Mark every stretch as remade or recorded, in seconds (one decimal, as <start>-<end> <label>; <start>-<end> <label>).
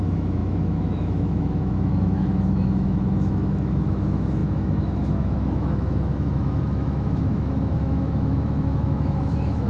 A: 0.0-9.7 remade